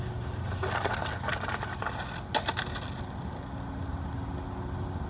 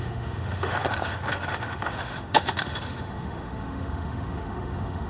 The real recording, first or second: first